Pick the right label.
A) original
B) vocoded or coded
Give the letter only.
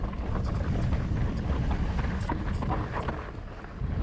A